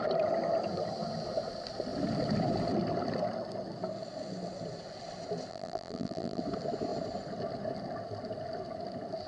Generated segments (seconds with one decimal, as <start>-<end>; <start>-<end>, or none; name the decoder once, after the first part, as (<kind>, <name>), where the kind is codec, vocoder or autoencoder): 5.5-6.4 (vocoder, BigVGAN v2)